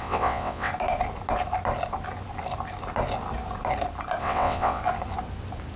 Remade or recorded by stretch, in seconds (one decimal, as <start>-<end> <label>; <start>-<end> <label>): 0.0-0.7 remade; 0.7-4.2 recorded; 4.2-4.8 remade; 4.8-5.8 recorded